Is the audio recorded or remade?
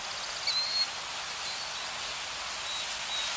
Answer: recorded